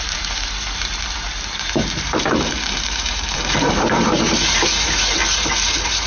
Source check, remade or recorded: remade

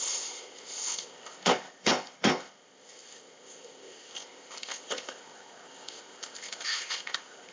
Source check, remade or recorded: remade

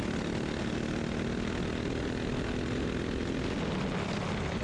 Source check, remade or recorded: recorded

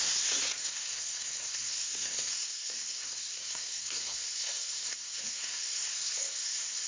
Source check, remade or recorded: remade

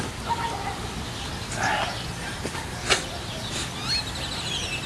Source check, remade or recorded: recorded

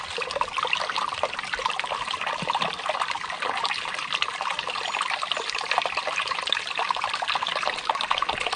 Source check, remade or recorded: recorded